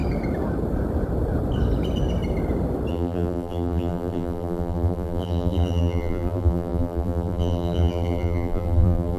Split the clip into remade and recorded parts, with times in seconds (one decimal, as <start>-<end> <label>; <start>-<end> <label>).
0.0-2.9 recorded; 2.9-9.2 remade